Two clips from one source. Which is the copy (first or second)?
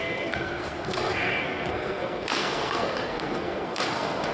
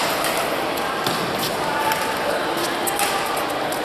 first